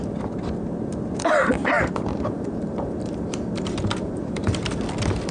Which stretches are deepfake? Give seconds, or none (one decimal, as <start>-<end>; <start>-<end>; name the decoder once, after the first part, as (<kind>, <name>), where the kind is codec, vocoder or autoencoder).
1.6-4.8 (vocoder, BigVGAN v2)